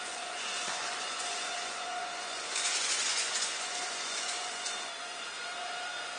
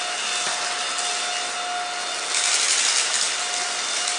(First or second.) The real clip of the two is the second